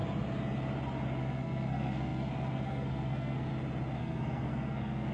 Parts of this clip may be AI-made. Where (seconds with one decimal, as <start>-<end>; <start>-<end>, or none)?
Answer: 1.2-3.5; 4.0-5.1